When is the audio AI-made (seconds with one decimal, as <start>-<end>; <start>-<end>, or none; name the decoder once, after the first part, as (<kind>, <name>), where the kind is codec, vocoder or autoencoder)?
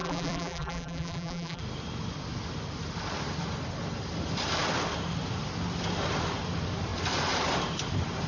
0.0-1.6 (vocoder, BigVGAN v2)